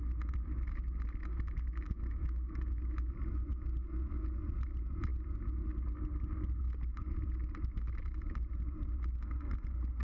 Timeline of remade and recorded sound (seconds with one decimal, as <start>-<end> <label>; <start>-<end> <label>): 0.0-1.3 recorded; 1.3-3.1 remade; 3.1-10.0 recorded